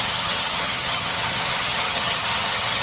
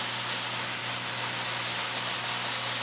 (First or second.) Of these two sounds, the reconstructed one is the first